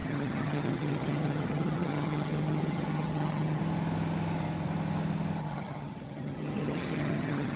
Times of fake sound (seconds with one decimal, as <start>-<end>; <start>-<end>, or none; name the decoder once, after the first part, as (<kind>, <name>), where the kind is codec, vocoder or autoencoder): 0.0-3.6 (vocoder, HiFi-GAN); 5.4-7.6